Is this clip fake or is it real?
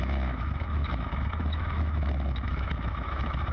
fake